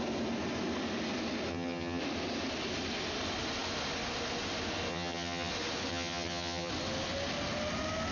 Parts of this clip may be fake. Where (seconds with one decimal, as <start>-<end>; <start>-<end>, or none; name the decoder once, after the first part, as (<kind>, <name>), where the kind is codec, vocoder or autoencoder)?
1.5-2.0 (vocoder, HiFi-GAN); 4.9-5.5; 5.9-6.7